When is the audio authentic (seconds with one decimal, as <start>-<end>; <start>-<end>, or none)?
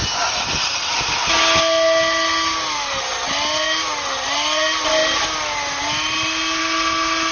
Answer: 0.0-7.3